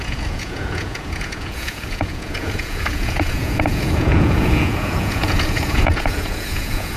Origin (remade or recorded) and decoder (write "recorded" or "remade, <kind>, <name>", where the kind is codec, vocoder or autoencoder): remade, vocoder, Vocos